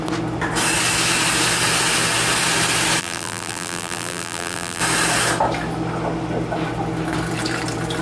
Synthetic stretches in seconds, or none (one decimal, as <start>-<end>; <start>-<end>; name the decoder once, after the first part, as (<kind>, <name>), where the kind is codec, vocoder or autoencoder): 3.0-4.8 (vocoder, BigVGAN v2)